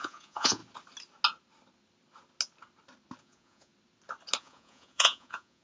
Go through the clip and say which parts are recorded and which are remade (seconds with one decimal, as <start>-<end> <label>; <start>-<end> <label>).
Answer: 0.0-0.6 remade; 0.6-3.2 recorded; 3.2-3.7 remade; 3.7-4.4 recorded; 4.4-5.6 remade